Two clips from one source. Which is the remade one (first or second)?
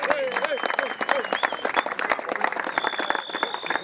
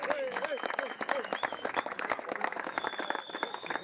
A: second